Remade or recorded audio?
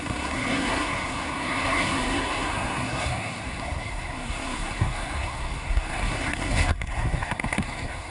remade